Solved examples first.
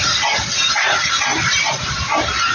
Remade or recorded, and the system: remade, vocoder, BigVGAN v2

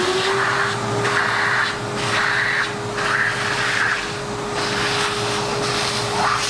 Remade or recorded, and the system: recorded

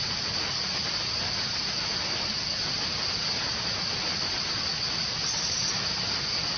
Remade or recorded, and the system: recorded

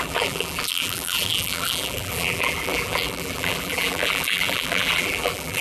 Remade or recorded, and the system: remade, vocoder, BigVGAN v2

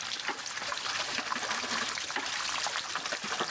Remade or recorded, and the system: recorded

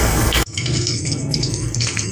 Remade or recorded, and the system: remade, codec, SNAC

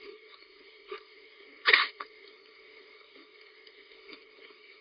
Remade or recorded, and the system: remade, codec, SNAC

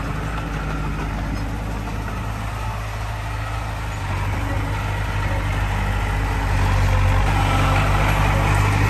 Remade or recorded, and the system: recorded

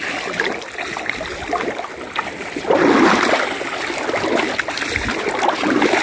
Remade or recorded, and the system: recorded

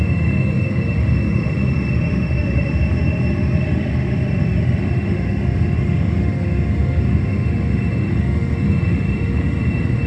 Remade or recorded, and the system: remade, autoencoder, DAC-VAE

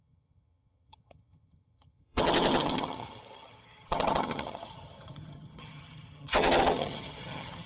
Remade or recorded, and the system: remade, vocoder, HiFi-GAN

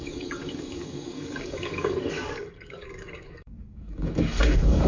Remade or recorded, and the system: remade, codec, DAC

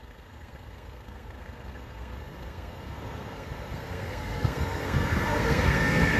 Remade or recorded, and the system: remade, codec, SNAC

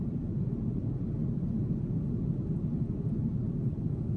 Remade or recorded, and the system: recorded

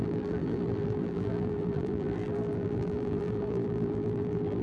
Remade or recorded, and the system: remade, vocoder, BigVGAN v2